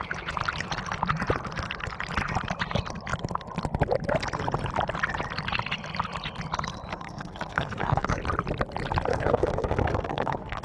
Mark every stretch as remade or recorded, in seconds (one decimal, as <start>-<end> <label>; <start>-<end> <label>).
0.0-6.9 recorded; 6.9-8.2 remade; 8.2-9.1 recorded; 9.1-10.6 remade